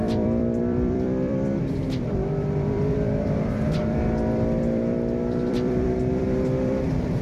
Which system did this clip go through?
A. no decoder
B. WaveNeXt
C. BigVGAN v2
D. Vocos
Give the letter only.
C